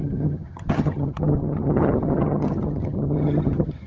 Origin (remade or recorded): remade